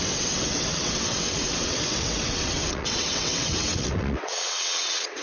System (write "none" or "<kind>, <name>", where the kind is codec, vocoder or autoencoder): vocoder, WaveNeXt